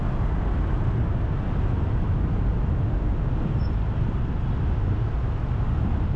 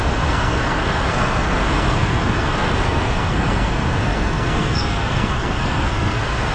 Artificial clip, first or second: second